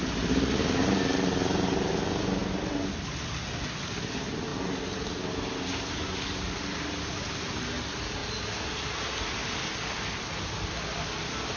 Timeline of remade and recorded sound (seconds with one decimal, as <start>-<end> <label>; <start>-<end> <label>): 0.0-11.6 recorded